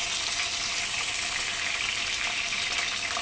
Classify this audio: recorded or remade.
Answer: recorded